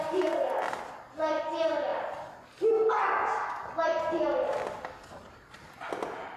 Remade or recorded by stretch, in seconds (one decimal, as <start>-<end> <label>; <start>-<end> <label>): 0.0-6.4 recorded

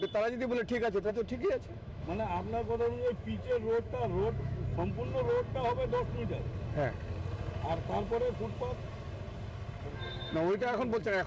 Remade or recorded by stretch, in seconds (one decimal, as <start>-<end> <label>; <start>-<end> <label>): 0.0-1.1 recorded; 1.1-4.7 remade; 4.7-9.9 recorded; 9.9-11.3 remade

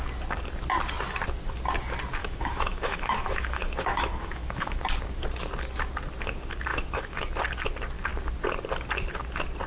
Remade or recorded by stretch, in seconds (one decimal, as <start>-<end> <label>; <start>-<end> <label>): 0.0-2.2 recorded; 2.2-4.8 remade; 4.8-6.7 recorded; 6.7-7.3 remade; 7.3-9.7 recorded

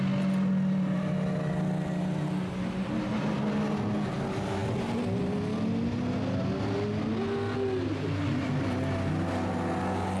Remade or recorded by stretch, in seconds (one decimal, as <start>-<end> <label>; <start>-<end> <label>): 0.0-10.2 recorded

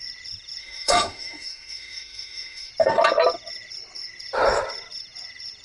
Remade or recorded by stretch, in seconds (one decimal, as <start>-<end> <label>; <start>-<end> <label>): 0.0-0.6 recorded; 0.6-2.7 remade; 2.7-5.6 recorded

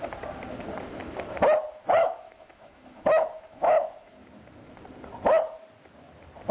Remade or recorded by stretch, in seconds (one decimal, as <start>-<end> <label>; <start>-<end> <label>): 0.0-2.0 recorded; 2.0-4.2 remade; 4.2-6.5 recorded

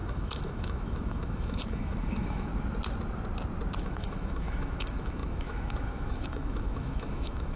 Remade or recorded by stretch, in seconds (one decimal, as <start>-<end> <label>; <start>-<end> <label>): 0.0-2.5 remade; 2.5-3.8 recorded; 3.8-7.6 remade

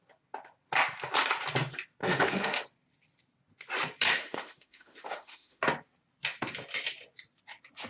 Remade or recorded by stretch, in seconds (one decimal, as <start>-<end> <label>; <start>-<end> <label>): 0.0-2.0 recorded; 2.0-2.6 remade; 2.6-4.1 recorded; 4.1-5.6 remade; 5.6-7.9 recorded